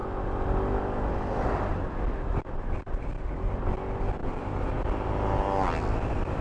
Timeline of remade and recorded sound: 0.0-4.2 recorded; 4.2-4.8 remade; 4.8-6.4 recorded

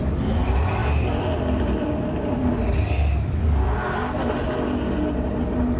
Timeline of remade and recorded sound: 0.0-0.8 recorded; 0.8-4.3 remade; 4.3-5.8 recorded

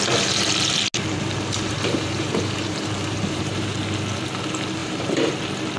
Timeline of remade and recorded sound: 0.0-1.7 recorded; 1.7-3.8 remade; 3.8-4.8 recorded; 4.8-5.3 remade; 5.3-5.8 recorded